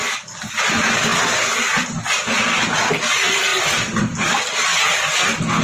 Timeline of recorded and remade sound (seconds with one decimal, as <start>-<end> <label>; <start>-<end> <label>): 0.0-3.5 recorded; 3.5-4.4 remade; 4.4-5.6 recorded